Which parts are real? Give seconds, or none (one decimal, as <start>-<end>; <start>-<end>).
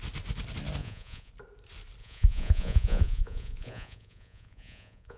0.0-0.8; 1.3-2.0